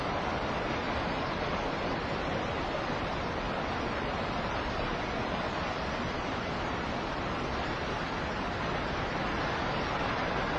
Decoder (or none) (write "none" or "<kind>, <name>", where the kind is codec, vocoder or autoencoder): none